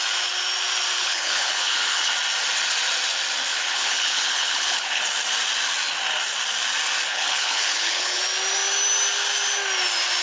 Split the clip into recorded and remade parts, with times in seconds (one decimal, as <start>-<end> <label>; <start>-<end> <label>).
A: 0.0-1.0 recorded; 1.0-2.1 remade; 2.1-3.5 recorded; 3.5-5.0 remade; 5.0-7.1 recorded; 7.1-8.2 remade; 8.2-10.2 recorded